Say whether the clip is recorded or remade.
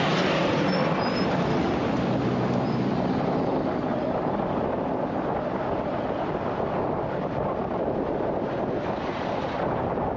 recorded